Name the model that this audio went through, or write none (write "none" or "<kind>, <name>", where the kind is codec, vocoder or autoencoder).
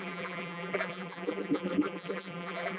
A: vocoder, BigVGAN v2